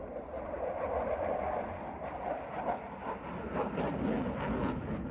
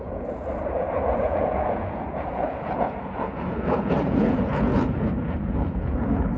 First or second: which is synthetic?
second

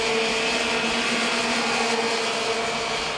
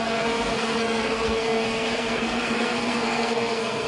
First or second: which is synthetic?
second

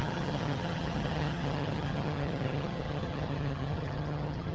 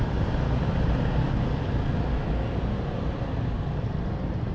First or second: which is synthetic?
first